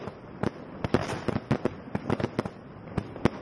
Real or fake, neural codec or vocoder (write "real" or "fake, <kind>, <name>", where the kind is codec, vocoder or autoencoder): real